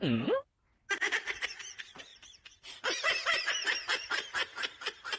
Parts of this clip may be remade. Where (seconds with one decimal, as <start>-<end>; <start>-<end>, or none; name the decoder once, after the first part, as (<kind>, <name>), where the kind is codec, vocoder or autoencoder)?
none